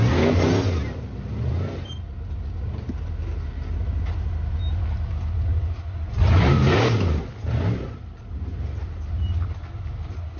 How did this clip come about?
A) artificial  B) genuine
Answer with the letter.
B